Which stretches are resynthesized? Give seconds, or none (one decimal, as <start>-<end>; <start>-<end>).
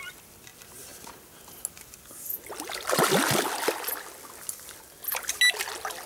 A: none